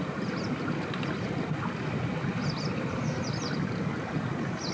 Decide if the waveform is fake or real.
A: real